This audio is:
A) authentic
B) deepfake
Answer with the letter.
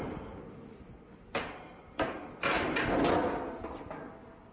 A